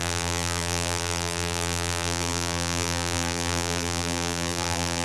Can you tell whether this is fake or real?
fake